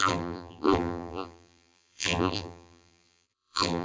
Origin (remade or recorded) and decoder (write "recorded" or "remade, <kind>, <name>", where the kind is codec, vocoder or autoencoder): remade, vocoder, BigVGAN v2